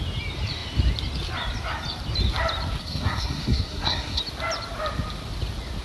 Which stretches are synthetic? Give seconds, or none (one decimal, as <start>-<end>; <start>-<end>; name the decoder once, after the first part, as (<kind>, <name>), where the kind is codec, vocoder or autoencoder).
2.8-4.2 (codec, SNAC)